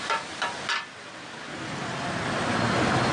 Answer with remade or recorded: recorded